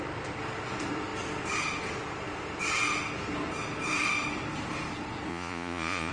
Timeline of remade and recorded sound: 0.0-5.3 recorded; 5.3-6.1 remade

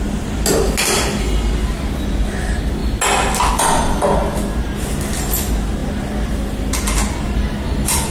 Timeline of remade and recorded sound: 0.0-8.1 recorded

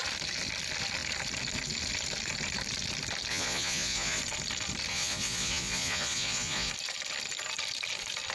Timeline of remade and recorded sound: 0.0-3.3 recorded; 3.3-4.2 remade; 4.2-4.9 recorded; 4.9-6.7 remade; 6.7-8.3 recorded

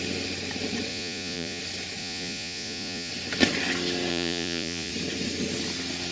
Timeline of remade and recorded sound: 0.0-0.9 recorded; 0.9-1.6 remade; 1.6-2.0 recorded; 2.0-3.1 remade; 3.1-4.1 recorded; 4.1-4.9 remade; 4.9-6.1 recorded

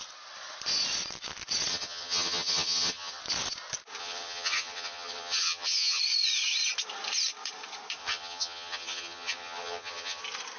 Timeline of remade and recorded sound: 0.0-1.7 recorded; 1.7-3.2 remade; 3.2-4.0 recorded; 4.0-6.0 remade; 6.0-8.0 recorded; 8.0-10.2 remade; 10.2-10.6 recorded